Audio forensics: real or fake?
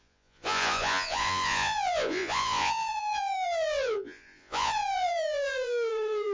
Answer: fake